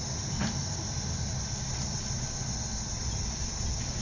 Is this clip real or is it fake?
real